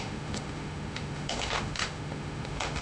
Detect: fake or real fake